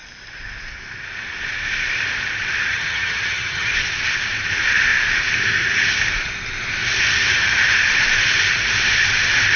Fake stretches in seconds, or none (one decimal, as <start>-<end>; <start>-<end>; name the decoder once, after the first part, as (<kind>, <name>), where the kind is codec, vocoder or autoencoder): 2.7-3.7 (vocoder, HiFi-GAN)